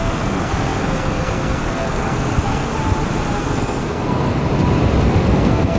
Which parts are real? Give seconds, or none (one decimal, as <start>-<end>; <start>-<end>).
2.7-3.4; 4.4-5.0